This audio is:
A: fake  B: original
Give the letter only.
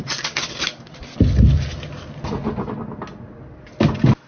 B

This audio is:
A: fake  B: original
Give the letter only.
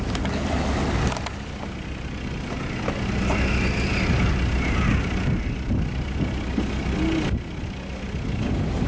B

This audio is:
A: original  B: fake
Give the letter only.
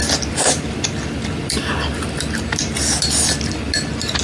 A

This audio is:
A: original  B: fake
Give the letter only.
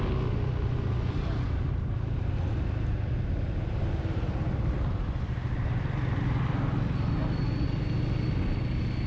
A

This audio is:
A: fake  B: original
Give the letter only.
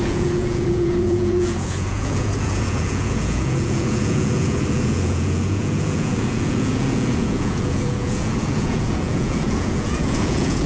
A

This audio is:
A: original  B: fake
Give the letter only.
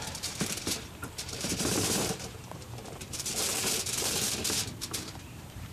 B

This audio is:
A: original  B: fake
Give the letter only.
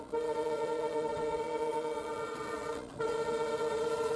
B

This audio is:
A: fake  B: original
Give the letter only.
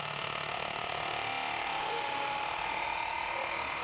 A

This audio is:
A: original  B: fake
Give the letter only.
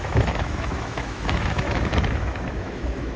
B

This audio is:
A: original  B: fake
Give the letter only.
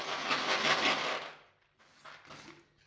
A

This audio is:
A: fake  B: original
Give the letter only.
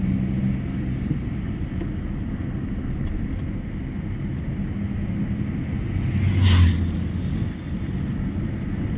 B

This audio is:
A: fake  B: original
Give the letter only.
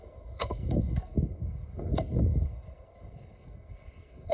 A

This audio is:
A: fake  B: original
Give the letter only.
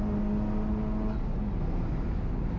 B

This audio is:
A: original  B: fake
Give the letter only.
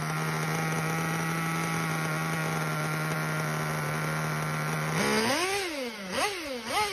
A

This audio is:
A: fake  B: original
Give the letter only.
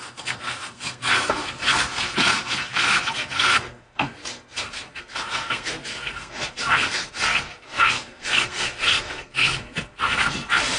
A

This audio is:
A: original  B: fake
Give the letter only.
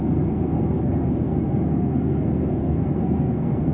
B